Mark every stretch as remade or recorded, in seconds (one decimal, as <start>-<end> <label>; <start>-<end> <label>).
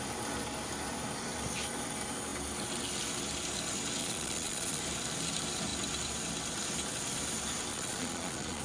0.0-4.0 recorded; 4.0-4.8 remade; 4.8-7.7 recorded; 7.7-8.6 remade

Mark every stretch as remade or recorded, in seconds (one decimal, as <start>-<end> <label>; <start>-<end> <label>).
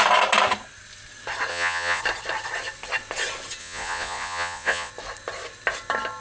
0.0-1.5 recorded; 1.5-2.0 remade; 2.0-3.6 recorded; 3.6-4.9 remade; 4.9-6.2 recorded